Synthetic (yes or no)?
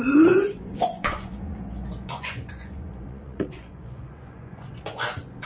yes